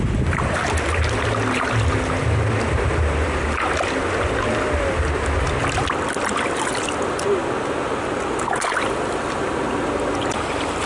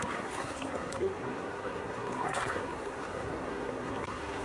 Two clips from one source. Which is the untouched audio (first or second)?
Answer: first